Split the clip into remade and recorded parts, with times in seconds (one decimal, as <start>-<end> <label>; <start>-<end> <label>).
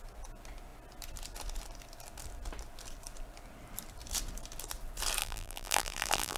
0.0-5.2 recorded; 5.2-6.4 remade